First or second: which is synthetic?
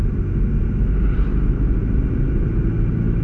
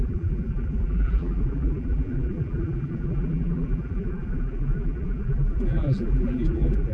second